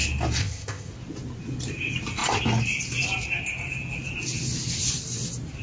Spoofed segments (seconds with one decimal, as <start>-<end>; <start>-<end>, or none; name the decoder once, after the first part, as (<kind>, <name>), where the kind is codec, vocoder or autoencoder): 0.4-0.9 (codec, ZipCodec)